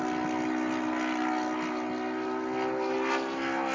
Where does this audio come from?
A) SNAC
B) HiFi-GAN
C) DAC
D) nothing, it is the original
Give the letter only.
D